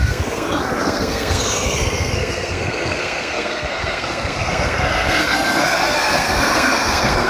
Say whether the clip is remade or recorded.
remade